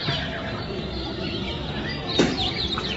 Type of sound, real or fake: fake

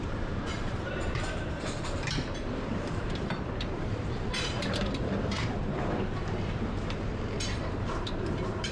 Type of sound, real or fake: fake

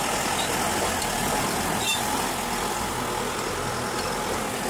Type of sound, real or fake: real